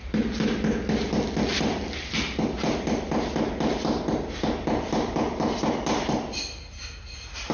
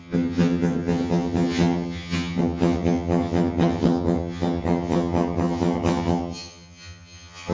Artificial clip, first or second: second